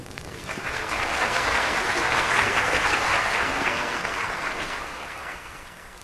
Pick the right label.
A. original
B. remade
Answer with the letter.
B